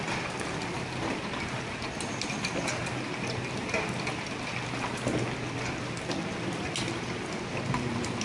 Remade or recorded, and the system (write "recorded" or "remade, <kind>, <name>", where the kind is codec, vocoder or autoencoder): recorded